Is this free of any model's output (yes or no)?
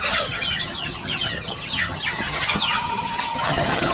no